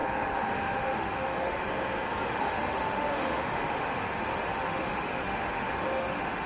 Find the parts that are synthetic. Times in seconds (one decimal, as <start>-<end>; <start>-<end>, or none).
0.0-1.6; 2.3-6.5